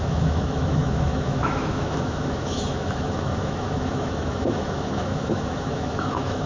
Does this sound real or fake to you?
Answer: fake